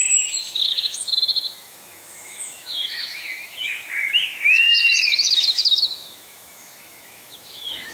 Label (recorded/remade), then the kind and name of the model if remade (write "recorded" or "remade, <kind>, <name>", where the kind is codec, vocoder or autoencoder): remade, autoencoder, DAC-VAE